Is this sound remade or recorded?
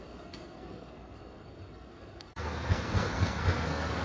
remade